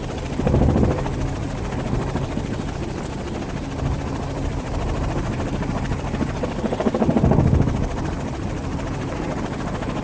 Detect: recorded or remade remade